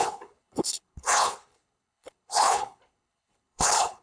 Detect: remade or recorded remade